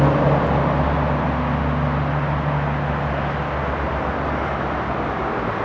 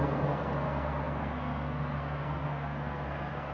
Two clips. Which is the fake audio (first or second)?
second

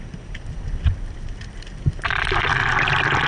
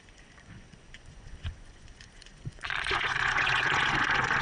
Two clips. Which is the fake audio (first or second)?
second